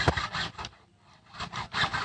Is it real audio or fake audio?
real